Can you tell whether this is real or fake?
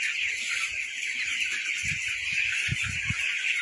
real